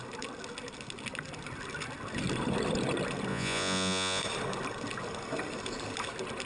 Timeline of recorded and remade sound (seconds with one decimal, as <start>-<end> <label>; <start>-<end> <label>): 0.0-3.3 recorded; 3.3-4.2 remade; 4.2-6.5 recorded

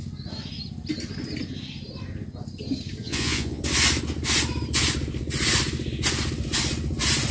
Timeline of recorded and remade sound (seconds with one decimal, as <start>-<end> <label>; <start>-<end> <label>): 0.0-3.0 recorded; 3.0-3.6 remade; 3.6-7.3 recorded